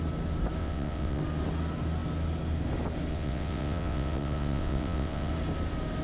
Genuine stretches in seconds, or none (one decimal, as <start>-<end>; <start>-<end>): 0.0-0.6; 1.2-3.1; 5.3-6.0

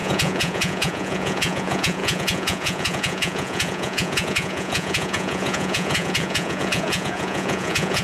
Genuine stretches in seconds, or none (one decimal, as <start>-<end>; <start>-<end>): none